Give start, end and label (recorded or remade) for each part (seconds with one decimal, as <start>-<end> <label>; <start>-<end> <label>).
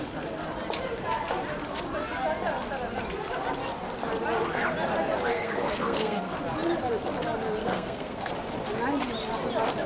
0.0-5.3 recorded; 5.3-6.4 remade; 6.4-7.6 recorded; 7.6-8.3 remade; 8.3-9.9 recorded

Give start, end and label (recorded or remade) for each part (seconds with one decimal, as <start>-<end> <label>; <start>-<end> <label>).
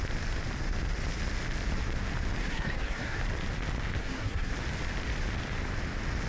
0.0-2.4 recorded; 2.4-3.2 remade; 3.2-4.0 recorded; 4.0-4.5 remade; 4.5-6.3 recorded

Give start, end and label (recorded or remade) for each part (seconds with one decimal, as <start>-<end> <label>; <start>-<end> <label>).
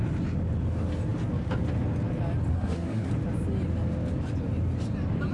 0.0-2.5 recorded; 2.5-3.1 remade; 3.1-5.3 recorded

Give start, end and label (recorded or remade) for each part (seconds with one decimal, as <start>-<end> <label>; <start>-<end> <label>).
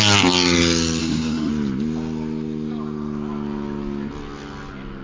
0.0-1.0 recorded; 1.0-1.5 remade; 1.5-5.0 recorded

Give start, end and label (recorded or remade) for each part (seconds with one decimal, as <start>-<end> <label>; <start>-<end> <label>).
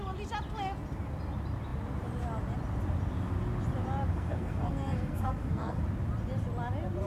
0.0-4.1 recorded; 4.1-5.8 remade; 5.8-7.1 recorded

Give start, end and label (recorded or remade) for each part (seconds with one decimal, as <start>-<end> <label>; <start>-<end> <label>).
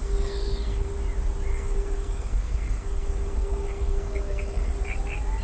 0.0-0.9 remade; 0.9-1.5 recorded; 1.5-4.7 remade; 4.7-5.4 recorded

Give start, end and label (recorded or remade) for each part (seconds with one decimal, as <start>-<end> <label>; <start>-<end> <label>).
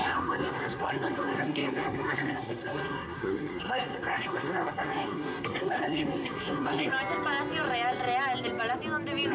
0.0-6.9 remade; 6.9-9.3 recorded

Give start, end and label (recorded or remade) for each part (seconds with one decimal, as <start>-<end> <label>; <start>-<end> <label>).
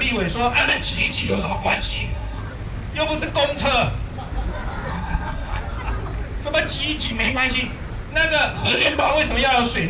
0.0-0.6 recorded; 0.6-2.4 remade; 2.4-4.9 recorded; 4.9-5.6 remade; 5.6-7.0 recorded; 7.0-7.5 remade; 7.5-8.6 recorded; 8.6-9.1 remade; 9.1-9.9 recorded